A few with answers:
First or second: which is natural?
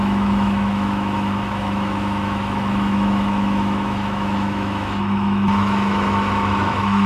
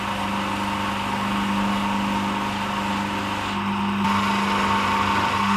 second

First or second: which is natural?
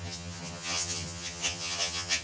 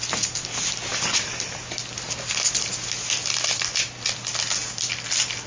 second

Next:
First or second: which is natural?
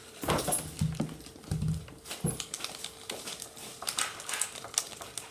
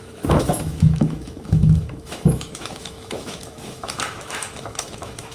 first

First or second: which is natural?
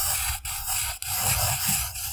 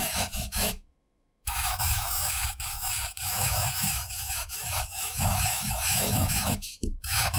first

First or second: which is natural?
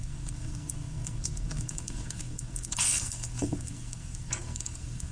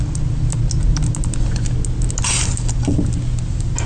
second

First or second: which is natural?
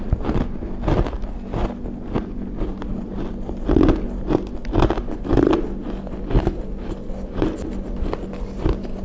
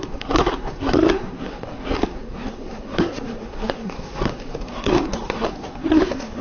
first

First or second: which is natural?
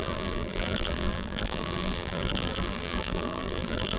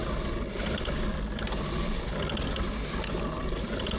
second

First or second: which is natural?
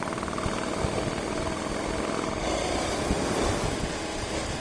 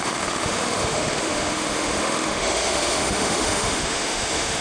first